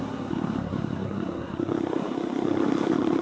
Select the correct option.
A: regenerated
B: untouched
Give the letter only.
A